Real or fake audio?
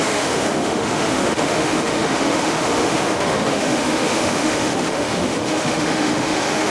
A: fake